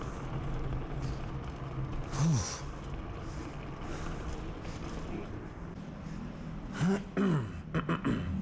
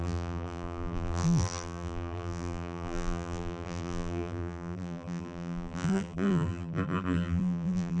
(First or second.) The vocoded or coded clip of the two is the second